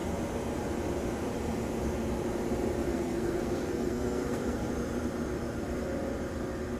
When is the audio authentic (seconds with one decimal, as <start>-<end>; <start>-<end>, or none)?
0.0-2.9; 4.7-6.8

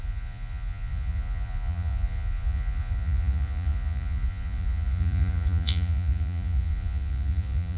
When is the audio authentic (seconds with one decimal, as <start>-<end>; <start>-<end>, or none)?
none

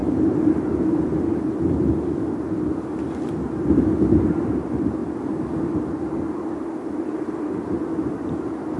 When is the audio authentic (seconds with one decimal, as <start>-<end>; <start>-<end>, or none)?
0.0-8.8